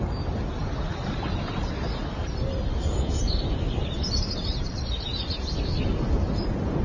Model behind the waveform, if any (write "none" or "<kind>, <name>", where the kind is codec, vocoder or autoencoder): none